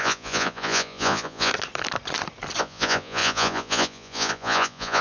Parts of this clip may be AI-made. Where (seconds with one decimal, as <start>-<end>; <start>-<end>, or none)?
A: 0.0-1.5; 2.6-5.0